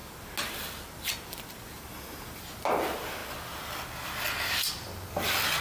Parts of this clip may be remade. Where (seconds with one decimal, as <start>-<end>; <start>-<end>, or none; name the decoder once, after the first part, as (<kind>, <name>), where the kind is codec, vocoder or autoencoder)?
none

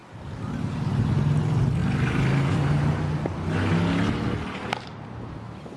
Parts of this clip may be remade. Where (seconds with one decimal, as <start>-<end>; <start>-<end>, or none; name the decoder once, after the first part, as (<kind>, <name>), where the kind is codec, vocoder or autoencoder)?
none

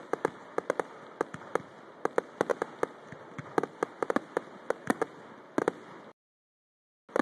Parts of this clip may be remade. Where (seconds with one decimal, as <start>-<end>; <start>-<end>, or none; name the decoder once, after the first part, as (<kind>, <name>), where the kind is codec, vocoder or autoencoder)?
none

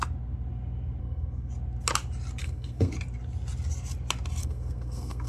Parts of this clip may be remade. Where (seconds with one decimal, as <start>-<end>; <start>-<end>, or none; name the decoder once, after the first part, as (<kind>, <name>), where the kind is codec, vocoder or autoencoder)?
1.0-1.5 (codec, SNAC); 2.4-2.9; 4.4-5.3